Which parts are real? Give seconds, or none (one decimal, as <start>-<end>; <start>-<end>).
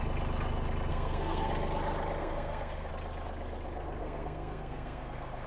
0.0-0.9; 1.5-2.2; 2.9-4.0